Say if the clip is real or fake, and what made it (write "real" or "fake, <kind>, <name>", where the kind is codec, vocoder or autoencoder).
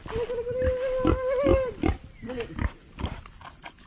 real